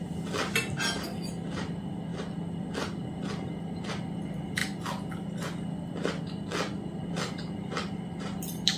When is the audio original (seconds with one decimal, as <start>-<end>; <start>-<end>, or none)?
2.1-3.6; 4.6-7.1